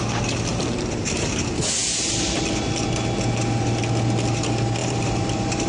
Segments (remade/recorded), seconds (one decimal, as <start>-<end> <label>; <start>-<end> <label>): 0.0-0.5 recorded; 0.5-1.4 remade; 1.4-4.8 recorded; 4.8-5.7 remade